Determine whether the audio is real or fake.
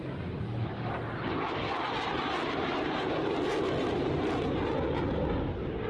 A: real